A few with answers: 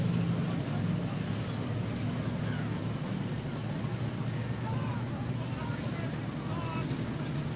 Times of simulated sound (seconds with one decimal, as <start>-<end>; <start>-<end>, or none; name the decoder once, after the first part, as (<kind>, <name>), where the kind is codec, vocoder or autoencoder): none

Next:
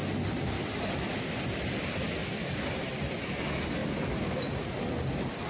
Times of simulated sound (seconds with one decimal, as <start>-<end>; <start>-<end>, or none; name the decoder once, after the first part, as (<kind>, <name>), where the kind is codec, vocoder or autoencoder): none

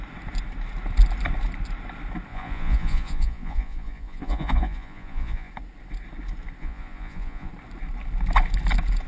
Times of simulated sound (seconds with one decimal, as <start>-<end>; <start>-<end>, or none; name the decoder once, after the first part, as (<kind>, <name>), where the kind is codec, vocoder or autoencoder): 2.3-5.5 (vocoder, Vocos); 6.6-7.5

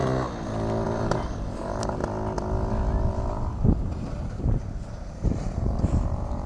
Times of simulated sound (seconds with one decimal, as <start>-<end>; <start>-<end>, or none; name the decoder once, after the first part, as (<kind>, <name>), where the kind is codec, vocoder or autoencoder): 0.9-2.0 (vocoder, BigVGAN v2); 3.1-6.5